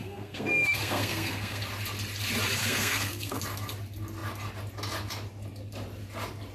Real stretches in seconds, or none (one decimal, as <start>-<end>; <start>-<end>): 1.6-2.6; 3.4-6.5